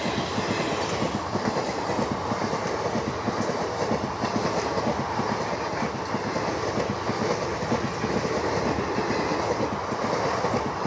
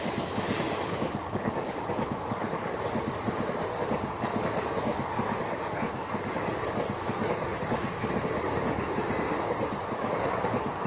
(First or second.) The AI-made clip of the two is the second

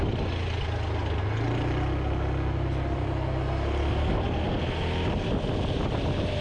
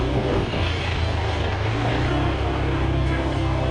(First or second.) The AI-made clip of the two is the second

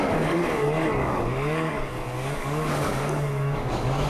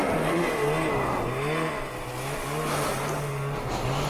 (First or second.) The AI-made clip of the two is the first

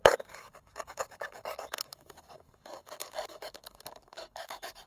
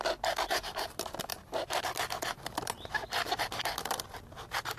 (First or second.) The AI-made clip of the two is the first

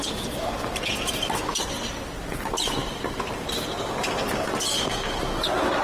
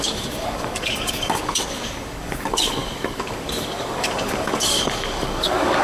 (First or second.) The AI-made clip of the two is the second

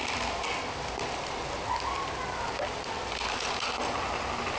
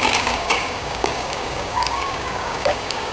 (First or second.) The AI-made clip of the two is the second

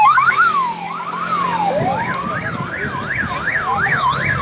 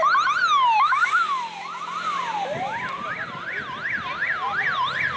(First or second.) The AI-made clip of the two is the first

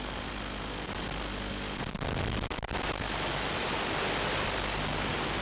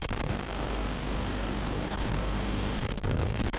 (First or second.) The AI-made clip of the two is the second